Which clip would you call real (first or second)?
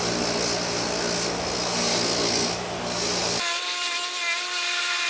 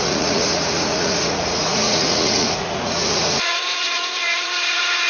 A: first